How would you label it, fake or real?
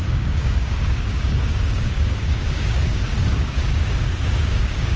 fake